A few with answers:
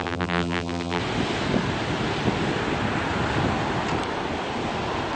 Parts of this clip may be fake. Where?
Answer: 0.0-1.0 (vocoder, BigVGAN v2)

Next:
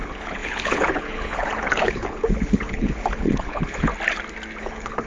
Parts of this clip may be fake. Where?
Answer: 0.0-3.9 (codec, HILCodec); 4.6-5.1

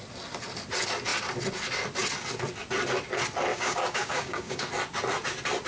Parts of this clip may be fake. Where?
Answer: 3.5-4.6 (codec, DAC)

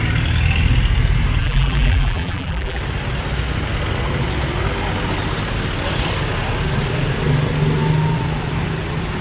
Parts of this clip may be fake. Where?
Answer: 1.4-2.8 (vocoder, BigVGAN v2)

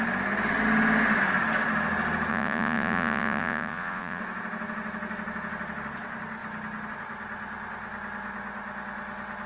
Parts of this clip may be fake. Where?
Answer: 2.3-4.2 (vocoder, Vocos)

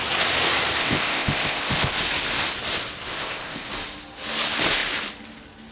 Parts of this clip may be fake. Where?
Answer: 0.8-1.9 (codec, ZipCodec); 3.1-3.7

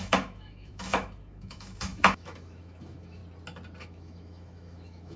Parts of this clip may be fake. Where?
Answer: 0.0-3.2 (autoencoder, DAC-VAE); 3.8-5.2